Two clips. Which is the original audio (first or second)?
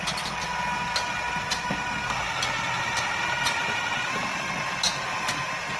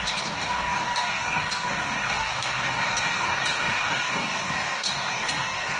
first